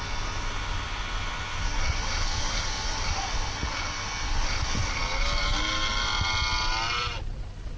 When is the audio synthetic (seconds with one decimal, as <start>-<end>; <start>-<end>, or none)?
none